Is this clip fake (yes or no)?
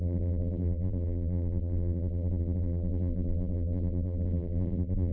yes